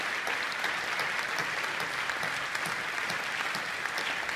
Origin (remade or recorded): recorded